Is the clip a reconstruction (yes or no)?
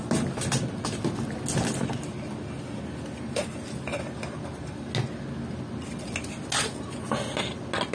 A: no